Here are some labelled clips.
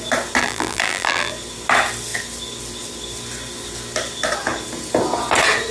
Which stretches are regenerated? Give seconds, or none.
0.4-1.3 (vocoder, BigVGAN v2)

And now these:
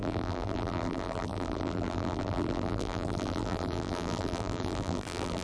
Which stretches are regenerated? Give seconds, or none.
0.0-5.4 (vocoder, BigVGAN v2)

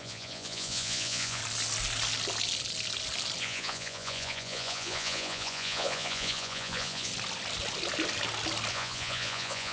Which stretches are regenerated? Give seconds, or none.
0.0-1.4 (vocoder, Vocos); 3.4-7.1; 8.7-9.7

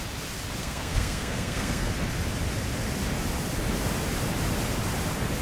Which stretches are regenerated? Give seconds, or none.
0.6-1.9 (codec, SNAC)

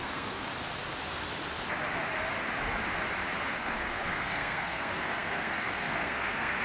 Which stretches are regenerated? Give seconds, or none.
0.0-0.5 (codec, SNAC); 3.5-6.6

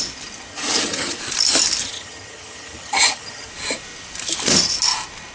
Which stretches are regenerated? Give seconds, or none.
0.5-1.2 (vocoder, HiFi-GAN); 1.8-3.5

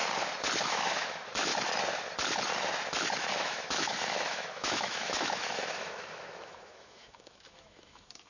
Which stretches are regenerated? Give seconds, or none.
0.6-1.5 (autoencoder, DAC-VAE); 3.3-8.3

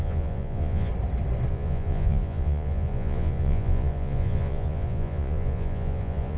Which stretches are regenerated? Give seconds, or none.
0.0-0.9 (vocoder, Vocos); 1.5-6.4